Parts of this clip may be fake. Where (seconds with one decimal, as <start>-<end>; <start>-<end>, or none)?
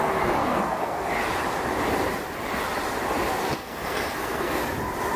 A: 0.4-1.1; 3.4-4.6